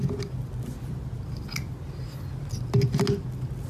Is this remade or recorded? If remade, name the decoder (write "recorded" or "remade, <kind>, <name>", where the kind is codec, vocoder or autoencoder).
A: recorded